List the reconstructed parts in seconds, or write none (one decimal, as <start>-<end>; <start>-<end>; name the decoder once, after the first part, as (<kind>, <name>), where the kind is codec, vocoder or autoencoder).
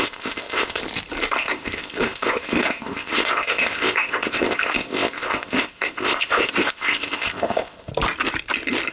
0.0-0.8 (codec, ZipCodec); 1.4-7.9